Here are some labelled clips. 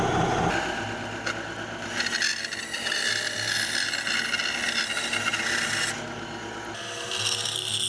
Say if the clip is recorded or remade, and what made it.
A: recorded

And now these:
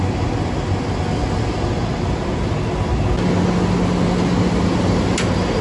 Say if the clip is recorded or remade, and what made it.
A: recorded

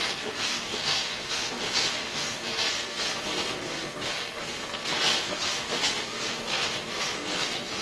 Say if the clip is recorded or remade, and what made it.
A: remade, codec, SNAC